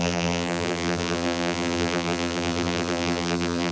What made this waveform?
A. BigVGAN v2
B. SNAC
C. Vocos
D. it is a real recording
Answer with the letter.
A